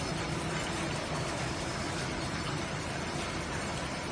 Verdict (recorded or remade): recorded